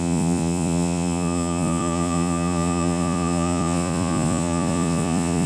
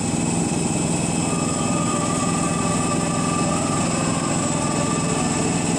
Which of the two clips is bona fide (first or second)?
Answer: second